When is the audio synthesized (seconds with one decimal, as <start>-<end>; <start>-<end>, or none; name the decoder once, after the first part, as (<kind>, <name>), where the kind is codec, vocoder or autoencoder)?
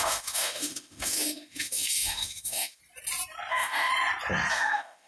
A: 0.0-2.8 (autoencoder, DAC-VAE); 3.5-3.9; 4.5-5.1